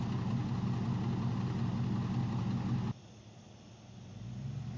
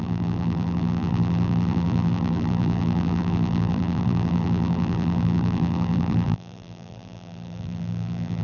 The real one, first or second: first